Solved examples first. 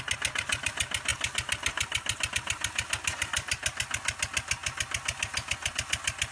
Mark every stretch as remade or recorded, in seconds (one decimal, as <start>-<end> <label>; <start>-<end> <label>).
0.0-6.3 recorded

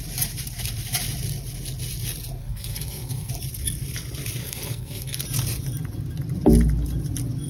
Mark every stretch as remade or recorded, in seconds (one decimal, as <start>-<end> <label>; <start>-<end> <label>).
0.0-2.4 recorded; 2.4-3.3 remade; 3.3-4.4 recorded; 4.4-5.2 remade; 5.2-7.5 recorded

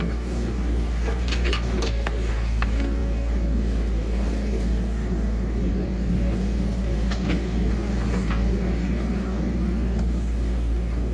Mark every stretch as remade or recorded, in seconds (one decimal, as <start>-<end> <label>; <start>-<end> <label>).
0.0-11.1 remade

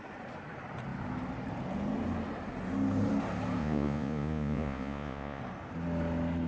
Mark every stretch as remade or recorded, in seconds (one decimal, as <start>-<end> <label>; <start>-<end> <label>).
0.0-3.6 recorded; 3.6-5.4 remade; 5.4-6.5 recorded

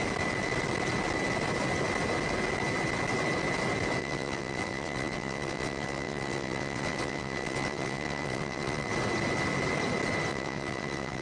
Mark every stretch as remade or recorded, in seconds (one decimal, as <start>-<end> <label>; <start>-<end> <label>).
0.0-4.0 recorded; 4.0-8.9 remade; 8.9-10.3 recorded; 10.3-11.2 remade